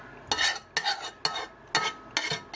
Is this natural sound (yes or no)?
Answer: yes